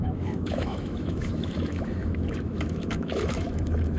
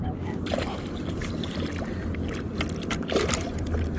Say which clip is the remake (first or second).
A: first